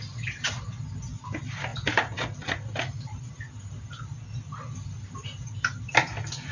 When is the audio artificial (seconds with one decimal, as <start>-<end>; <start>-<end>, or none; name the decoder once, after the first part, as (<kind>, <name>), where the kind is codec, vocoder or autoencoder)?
none